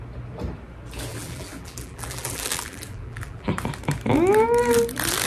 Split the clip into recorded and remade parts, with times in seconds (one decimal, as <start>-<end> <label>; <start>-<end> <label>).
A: 0.0-1.1 recorded; 1.1-3.5 remade; 3.5-5.3 recorded